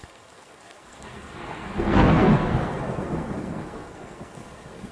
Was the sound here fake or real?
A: fake